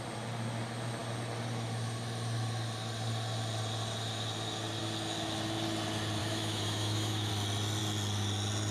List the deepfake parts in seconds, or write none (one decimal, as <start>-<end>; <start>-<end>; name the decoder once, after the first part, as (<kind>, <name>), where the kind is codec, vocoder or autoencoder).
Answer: 6.2-7.3 (autoencoder, DAC-VAE)